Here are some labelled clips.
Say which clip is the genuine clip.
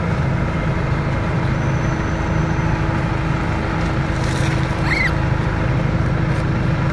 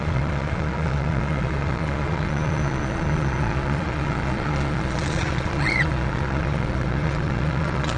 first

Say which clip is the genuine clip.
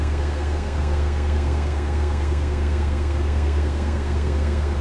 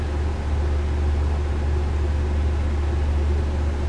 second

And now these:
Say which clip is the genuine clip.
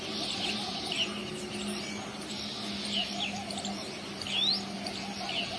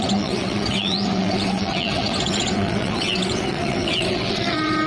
first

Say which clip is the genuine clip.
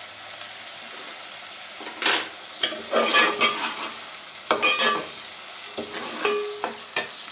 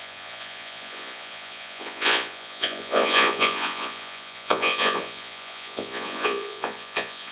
first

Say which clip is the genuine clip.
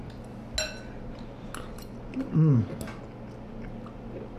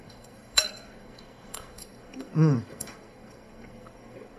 first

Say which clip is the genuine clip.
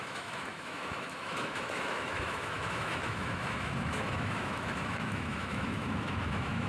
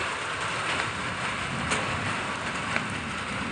second